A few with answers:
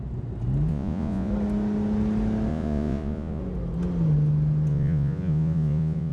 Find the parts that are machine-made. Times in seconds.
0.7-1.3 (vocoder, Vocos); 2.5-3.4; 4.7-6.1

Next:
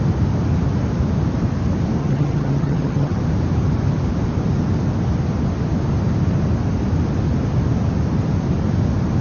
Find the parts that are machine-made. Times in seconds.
2.0-3.2 (vocoder, HiFi-GAN)

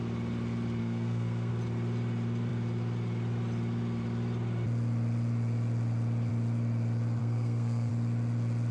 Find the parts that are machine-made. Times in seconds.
0.8-1.5 (codec, SNAC); 7.2-7.9

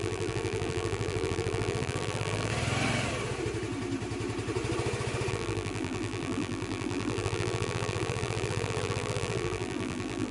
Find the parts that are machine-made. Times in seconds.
0.0-2.5 (vocoder, BigVGAN v2); 5.3-10.3